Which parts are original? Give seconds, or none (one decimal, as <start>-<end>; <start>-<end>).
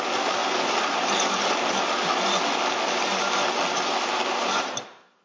0.0-0.4; 1.7-4.1